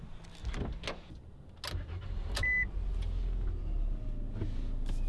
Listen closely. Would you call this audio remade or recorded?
recorded